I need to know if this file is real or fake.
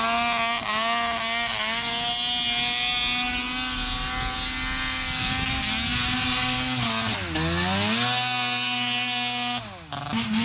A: real